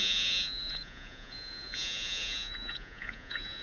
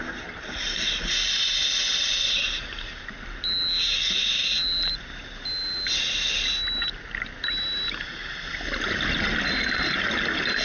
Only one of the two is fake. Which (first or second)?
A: first